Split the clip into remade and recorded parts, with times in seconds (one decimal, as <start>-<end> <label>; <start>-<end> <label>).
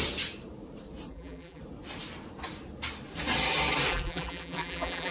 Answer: 0.0-1.1 recorded; 1.1-1.6 remade; 1.6-3.9 recorded; 3.9-5.1 remade